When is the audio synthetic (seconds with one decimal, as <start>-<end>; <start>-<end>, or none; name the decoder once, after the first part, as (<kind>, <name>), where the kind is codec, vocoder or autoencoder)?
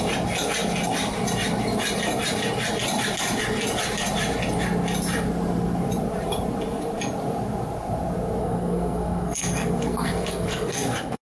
8.4-11.2 (codec, SNAC)